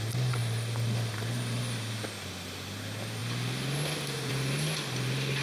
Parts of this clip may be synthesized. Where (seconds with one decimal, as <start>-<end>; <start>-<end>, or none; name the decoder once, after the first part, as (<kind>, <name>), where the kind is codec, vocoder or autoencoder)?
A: none